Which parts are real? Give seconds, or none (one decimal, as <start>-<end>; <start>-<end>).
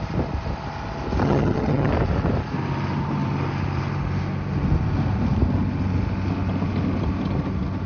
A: 0.0-1.2; 1.9-7.9